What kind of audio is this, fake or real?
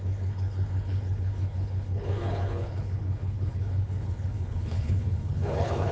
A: fake